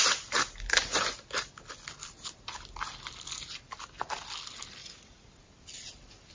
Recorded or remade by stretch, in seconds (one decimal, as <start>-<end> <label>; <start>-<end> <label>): 0.0-4.8 recorded; 4.8-5.4 remade; 5.4-6.3 recorded